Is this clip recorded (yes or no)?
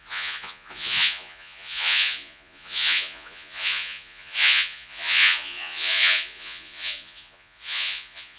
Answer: no